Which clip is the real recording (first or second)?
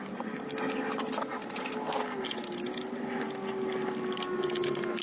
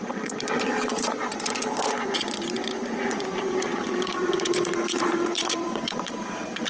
first